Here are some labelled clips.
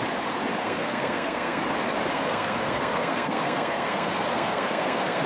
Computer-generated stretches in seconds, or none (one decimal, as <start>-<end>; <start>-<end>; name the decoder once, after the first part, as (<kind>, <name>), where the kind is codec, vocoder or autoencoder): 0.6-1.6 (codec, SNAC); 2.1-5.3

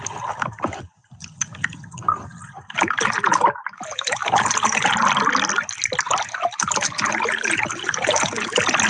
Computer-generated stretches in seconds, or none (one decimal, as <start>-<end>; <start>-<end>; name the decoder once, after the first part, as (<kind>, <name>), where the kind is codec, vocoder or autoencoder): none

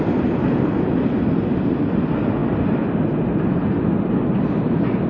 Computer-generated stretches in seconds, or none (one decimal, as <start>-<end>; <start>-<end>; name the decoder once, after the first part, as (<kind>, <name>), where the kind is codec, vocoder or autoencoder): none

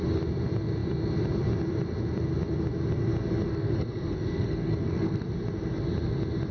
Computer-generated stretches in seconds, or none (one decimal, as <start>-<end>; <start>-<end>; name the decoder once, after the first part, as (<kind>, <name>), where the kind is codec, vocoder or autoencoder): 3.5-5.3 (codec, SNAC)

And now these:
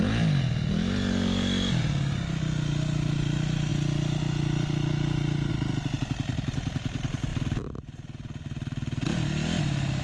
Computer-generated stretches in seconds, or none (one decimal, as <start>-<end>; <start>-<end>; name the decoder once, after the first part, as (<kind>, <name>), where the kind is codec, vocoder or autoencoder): none

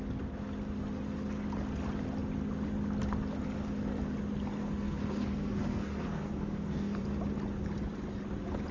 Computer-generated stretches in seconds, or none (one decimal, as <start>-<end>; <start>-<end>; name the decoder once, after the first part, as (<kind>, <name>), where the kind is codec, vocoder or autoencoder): 4.6-7.0 (codec, SNAC)

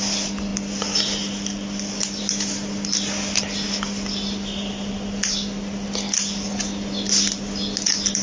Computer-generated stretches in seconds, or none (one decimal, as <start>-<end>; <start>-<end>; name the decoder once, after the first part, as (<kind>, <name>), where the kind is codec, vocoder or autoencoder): none

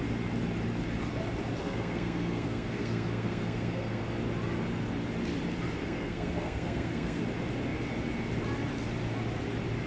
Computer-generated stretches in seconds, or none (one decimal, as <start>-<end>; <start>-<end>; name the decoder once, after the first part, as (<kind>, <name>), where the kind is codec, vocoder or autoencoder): 1.6-4.0 (codec, SNAC); 5.8-7.2